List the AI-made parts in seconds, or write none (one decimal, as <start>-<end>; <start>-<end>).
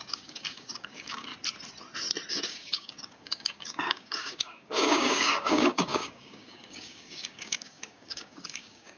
0.0-1.3; 2.3-9.0